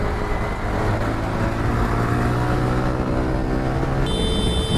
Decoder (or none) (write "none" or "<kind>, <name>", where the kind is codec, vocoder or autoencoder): none